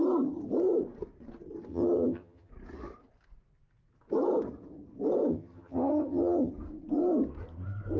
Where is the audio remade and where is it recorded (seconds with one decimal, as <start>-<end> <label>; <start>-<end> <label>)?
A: 0.0-1.7 recorded; 1.7-2.5 remade; 2.5-5.3 recorded; 5.3-6.5 remade; 6.5-8.0 recorded